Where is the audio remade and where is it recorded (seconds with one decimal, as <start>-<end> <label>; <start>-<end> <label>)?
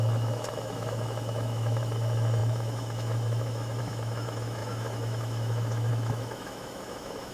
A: 0.0-7.3 remade